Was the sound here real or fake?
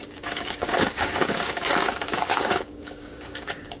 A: fake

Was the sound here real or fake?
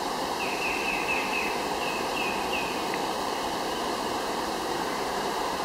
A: fake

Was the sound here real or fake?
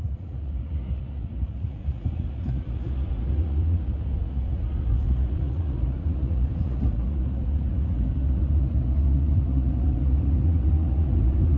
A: fake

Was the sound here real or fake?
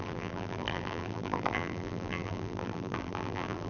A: fake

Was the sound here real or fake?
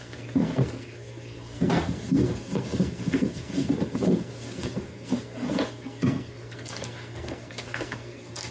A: fake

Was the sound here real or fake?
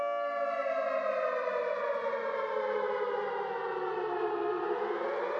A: real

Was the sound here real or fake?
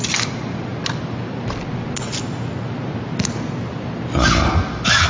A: real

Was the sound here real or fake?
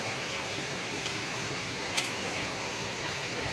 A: fake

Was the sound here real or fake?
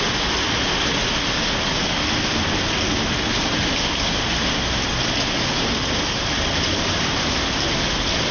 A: real